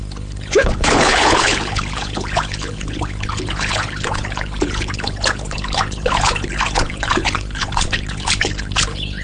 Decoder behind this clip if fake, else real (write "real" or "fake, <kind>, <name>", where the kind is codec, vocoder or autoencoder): fake, codec, HILCodec